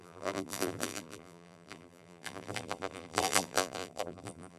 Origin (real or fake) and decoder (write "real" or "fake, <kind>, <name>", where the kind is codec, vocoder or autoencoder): fake, vocoder, BigVGAN v2